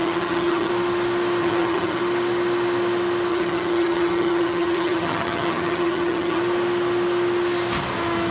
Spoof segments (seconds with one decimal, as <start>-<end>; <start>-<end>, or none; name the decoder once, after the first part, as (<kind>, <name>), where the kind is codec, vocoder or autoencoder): 0.0-0.7 (vocoder, HiFi-GAN); 1.4-2.0; 3.3-6.4